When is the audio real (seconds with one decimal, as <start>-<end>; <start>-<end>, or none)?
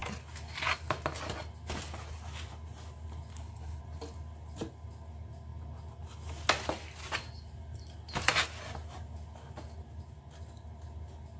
0.0-3.3; 3.8-11.4